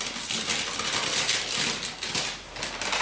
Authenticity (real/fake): real